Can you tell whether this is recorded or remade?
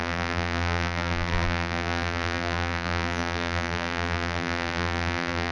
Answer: remade